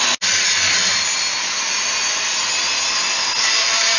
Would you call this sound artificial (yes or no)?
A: no